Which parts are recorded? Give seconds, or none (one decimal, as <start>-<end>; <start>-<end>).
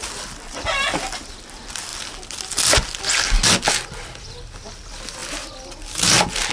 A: 0.0-6.5